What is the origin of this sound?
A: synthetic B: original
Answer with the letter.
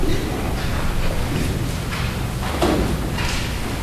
B